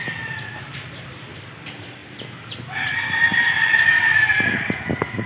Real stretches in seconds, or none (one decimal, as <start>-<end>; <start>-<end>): 2.0-5.3